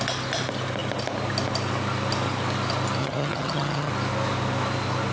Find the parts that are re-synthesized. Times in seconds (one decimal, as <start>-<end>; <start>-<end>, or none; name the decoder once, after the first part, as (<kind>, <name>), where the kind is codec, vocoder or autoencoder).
3.0-3.9 (vocoder, HiFi-GAN)